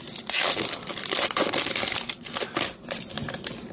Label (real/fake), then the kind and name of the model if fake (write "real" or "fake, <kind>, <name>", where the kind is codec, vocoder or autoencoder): real